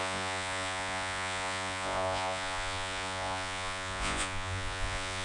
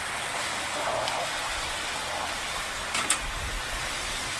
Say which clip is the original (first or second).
second